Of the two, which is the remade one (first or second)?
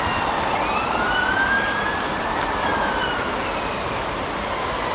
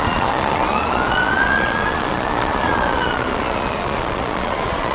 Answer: second